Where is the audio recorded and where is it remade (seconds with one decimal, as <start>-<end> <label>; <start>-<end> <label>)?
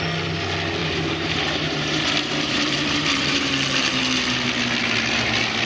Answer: 0.0-0.8 recorded; 0.8-3.5 remade; 3.5-5.6 recorded